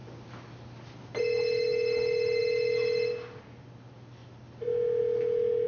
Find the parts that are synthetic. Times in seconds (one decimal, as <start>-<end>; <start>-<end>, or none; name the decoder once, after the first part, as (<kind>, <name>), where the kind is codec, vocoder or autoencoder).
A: none